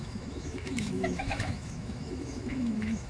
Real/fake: fake